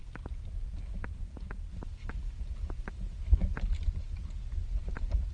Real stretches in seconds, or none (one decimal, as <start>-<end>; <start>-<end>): 0.0-5.3

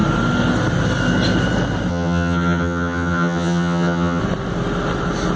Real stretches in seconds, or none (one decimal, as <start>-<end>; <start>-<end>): 0.0-1.9; 4.2-5.4

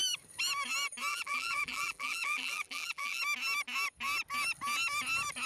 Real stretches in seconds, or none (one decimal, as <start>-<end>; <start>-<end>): 0.0-1.1; 3.2-5.5

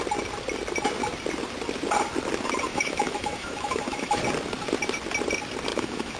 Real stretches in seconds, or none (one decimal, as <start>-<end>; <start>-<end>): 0.0-2.7; 4.2-5.7

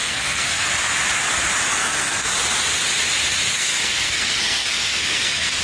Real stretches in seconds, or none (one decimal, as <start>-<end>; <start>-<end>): 0.7-1.7; 2.3-3.5

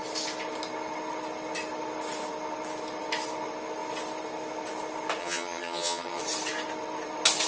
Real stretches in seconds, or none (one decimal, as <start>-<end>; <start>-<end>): 0.0-5.2; 6.2-7.5

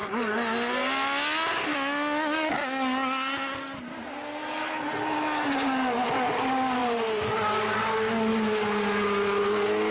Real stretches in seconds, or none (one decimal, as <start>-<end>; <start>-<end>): 0.0-9.9

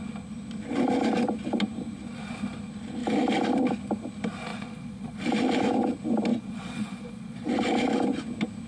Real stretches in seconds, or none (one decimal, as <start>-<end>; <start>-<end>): 0.0-4.5; 5.2-6.3; 7.5-8.7